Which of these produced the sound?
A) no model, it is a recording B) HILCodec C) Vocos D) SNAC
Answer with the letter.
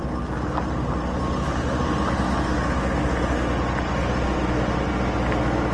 A